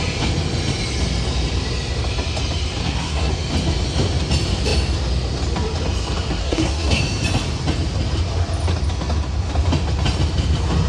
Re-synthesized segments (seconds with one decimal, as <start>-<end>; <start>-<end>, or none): 2.8-3.3; 6.4-7.0